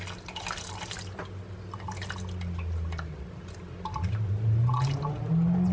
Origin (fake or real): real